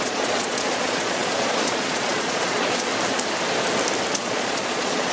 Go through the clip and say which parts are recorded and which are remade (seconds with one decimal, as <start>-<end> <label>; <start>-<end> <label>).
0.0-2.9 remade; 2.9-4.1 recorded; 4.1-5.1 remade